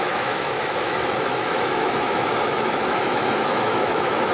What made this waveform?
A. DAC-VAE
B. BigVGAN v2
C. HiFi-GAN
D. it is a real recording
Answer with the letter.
A